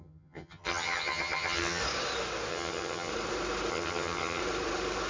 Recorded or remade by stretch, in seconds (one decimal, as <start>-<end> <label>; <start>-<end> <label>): 0.0-1.8 remade; 1.8-2.5 recorded; 2.5-3.1 remade; 3.1-3.7 recorded; 3.7-4.4 remade; 4.4-5.1 recorded